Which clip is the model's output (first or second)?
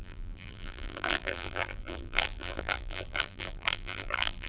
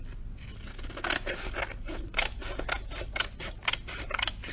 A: first